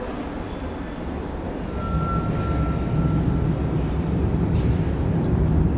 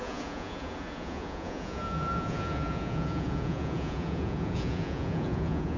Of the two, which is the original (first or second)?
first